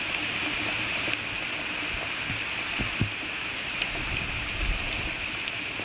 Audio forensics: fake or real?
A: real